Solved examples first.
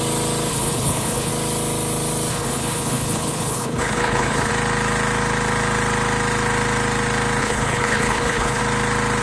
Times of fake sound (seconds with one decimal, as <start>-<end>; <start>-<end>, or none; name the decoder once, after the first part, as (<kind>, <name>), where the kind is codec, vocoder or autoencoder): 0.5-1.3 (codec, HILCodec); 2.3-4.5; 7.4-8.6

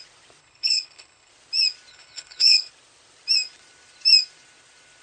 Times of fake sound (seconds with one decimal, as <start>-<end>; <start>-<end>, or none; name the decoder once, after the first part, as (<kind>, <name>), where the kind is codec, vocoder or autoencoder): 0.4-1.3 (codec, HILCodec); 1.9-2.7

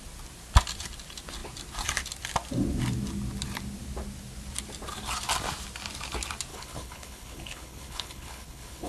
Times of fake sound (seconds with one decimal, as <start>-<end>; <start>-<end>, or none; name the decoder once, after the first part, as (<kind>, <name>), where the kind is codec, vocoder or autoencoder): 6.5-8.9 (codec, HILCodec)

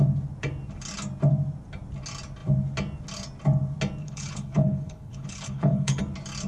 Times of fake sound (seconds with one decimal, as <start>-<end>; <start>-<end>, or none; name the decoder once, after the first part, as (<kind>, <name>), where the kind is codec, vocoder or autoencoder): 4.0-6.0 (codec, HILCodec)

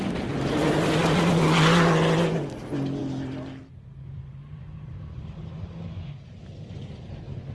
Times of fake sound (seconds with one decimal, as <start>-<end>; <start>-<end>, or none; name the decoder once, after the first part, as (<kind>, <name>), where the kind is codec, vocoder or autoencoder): none

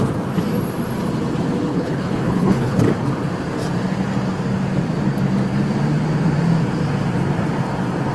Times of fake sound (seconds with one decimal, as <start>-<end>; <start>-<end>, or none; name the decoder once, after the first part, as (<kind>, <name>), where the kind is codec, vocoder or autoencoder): 1.7-2.8 (codec, HILCodec)